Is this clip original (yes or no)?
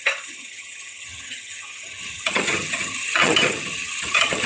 no